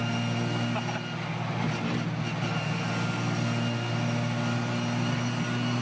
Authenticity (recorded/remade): recorded